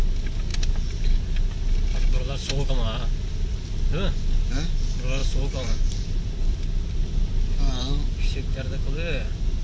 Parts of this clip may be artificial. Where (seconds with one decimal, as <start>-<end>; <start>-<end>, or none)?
5.2-6.3